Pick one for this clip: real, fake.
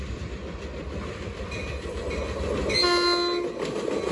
real